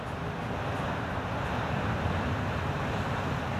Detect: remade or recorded recorded